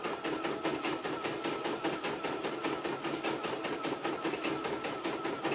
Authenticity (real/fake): real